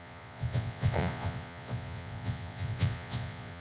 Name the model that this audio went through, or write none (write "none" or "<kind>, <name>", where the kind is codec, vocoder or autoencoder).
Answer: vocoder, Vocos